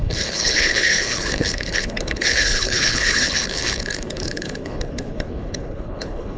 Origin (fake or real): fake